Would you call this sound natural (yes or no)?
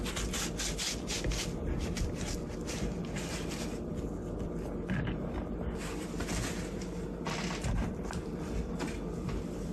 yes